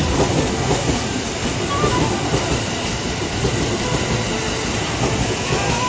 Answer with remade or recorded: recorded